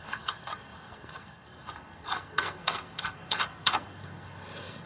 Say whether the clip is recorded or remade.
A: remade